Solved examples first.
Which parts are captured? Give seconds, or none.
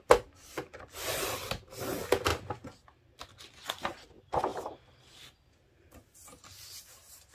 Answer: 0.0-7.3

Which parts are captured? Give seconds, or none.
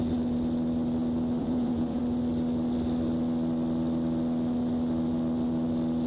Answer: 0.0-1.4; 2.0-6.1